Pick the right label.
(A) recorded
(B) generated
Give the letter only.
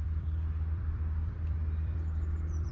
B